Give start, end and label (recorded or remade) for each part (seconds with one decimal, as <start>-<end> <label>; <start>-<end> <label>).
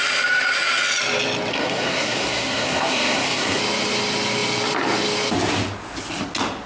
0.0-1.5 recorded; 1.5-3.6 remade; 3.6-6.7 recorded